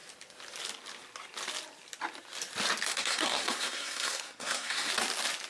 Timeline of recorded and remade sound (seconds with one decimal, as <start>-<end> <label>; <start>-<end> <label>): 0.0-2.9 recorded; 2.9-4.9 remade; 4.9-5.5 recorded